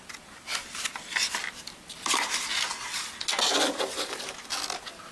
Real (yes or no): yes